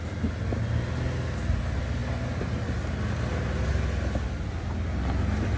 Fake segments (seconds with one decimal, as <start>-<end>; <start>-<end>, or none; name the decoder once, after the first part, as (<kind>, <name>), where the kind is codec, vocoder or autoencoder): none